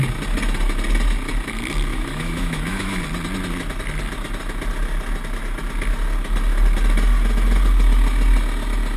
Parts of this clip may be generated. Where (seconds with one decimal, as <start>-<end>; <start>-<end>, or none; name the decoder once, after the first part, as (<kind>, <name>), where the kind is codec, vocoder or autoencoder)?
1.9-3.0 (autoencoder, DAC-VAE)